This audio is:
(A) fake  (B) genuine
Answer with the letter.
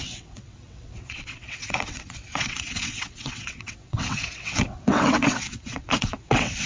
A